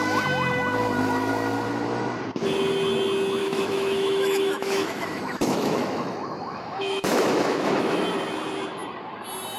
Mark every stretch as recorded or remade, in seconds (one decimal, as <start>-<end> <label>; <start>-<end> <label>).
0.0-3.4 recorded; 3.4-8.0 remade; 8.0-9.6 recorded